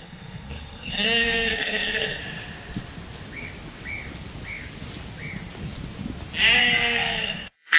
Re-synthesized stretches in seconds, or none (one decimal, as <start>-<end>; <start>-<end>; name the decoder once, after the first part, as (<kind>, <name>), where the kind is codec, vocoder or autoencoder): 0.0-2.2 (codec, SNAC); 6.6-7.8